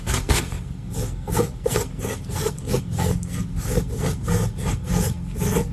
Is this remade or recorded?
remade